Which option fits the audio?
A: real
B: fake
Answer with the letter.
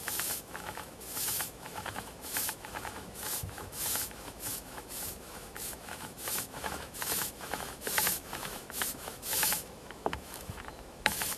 B